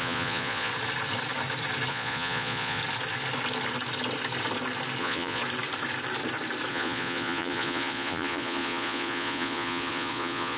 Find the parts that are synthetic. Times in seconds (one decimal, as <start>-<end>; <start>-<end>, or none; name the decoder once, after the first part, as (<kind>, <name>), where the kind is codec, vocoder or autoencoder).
0.0-0.7 (vocoder, Vocos); 1.9-2.8; 5.0-5.4; 6.7-10.6